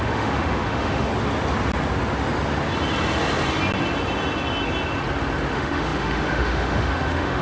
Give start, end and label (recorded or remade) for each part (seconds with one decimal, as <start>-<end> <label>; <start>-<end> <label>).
0.0-1.1 remade; 1.1-5.5 recorded; 5.5-7.4 remade